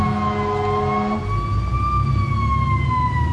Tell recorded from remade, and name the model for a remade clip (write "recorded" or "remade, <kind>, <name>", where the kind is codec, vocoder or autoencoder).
recorded